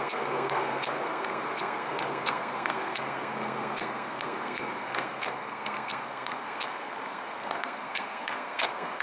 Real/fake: fake